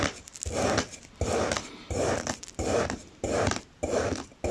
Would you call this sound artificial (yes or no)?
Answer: no